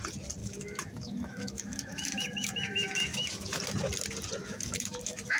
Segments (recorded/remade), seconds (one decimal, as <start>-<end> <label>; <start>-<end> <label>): 0.0-0.4 recorded; 0.4-3.6 remade; 3.6-4.4 recorded; 4.4-5.4 remade